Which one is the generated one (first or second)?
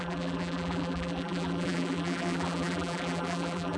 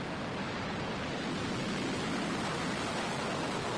first